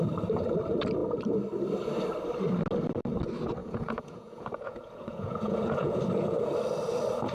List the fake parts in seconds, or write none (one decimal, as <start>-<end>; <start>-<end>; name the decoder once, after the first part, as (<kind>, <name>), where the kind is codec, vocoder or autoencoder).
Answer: 3.6-6.0 (vocoder, Vocos)